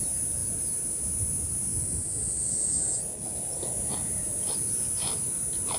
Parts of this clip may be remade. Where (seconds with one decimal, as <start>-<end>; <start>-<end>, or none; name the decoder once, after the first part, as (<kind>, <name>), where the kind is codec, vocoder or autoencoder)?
none